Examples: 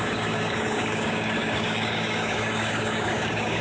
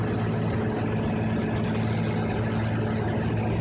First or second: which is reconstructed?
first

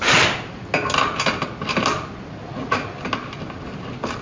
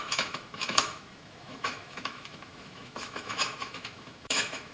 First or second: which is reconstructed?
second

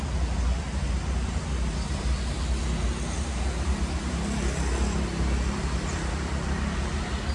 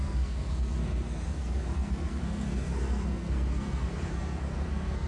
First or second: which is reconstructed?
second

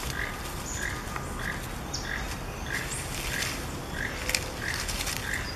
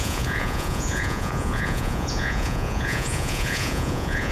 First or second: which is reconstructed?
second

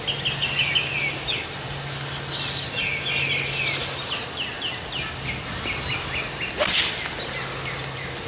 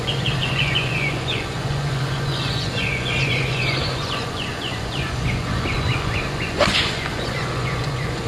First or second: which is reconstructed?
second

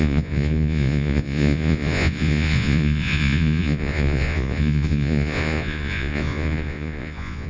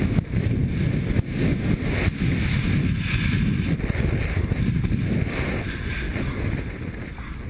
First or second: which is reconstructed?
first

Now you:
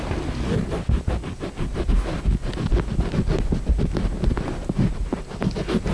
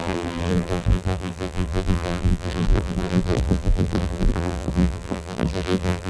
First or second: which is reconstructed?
second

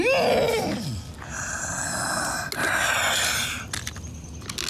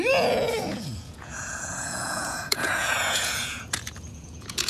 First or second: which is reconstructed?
second